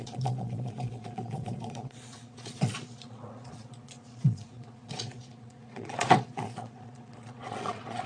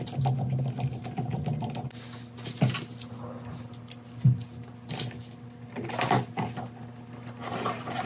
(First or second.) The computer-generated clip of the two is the first